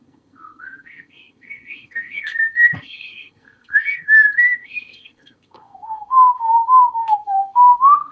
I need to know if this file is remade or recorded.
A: remade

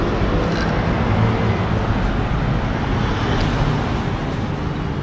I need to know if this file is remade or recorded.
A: recorded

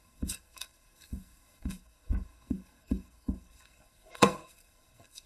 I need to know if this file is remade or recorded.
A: remade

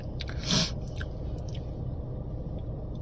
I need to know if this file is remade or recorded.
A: recorded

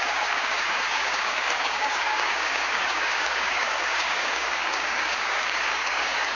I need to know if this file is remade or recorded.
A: remade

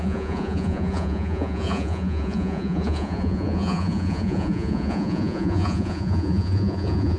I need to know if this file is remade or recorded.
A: remade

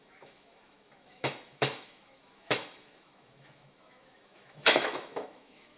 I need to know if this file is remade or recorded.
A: remade